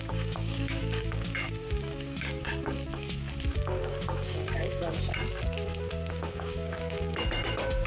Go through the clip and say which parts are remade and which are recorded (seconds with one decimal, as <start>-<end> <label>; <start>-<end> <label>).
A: 0.0-2.5 remade; 2.5-3.5 recorded; 3.5-5.1 remade; 5.1-6.1 recorded; 6.1-7.9 remade